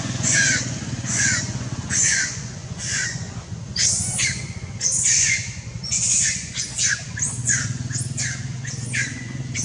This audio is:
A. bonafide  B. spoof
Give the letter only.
B